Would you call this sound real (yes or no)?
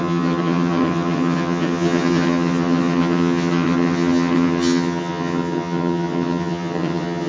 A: no